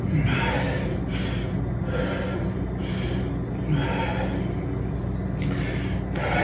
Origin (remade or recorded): recorded